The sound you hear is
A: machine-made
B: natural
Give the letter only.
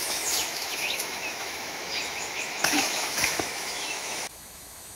A